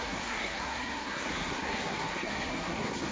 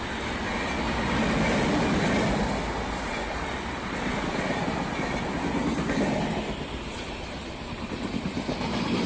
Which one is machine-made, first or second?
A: first